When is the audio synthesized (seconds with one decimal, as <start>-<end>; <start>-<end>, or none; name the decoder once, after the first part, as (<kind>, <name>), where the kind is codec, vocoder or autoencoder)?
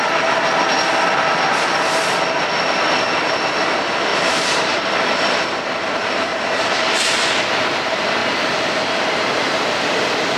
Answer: 4.1-4.8 (vocoder, BigVGAN v2); 8.2-9.5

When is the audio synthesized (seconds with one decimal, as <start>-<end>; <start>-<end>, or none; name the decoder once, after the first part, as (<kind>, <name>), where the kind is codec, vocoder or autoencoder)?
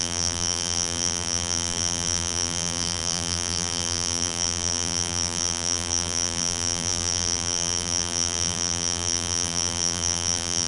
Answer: 0.0-10.7 (vocoder, BigVGAN v2)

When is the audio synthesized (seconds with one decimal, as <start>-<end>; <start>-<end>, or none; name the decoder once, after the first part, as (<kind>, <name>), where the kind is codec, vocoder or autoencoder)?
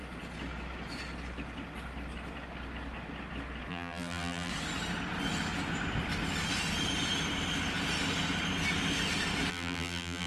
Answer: 3.7-4.5 (vocoder, BigVGAN v2); 9.5-10.3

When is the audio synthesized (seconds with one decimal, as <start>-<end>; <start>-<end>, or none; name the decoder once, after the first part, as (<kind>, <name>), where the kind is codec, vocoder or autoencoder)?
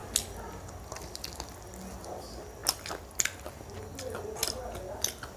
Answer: none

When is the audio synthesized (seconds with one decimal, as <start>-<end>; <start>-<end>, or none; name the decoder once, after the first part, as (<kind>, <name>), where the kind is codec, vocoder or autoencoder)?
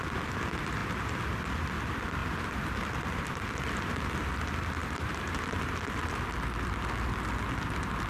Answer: 2.2-4.0 (vocoder, BigVGAN v2); 4.8-5.6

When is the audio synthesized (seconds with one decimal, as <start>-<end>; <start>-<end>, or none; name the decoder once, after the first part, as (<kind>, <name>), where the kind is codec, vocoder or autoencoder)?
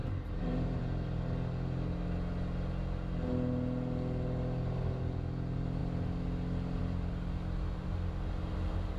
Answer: 0.0-0.8 (vocoder, BigVGAN v2)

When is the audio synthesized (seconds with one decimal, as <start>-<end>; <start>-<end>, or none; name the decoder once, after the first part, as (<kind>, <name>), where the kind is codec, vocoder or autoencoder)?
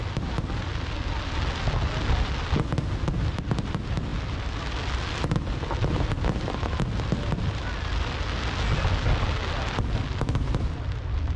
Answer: none